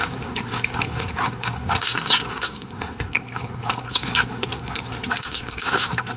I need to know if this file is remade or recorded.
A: remade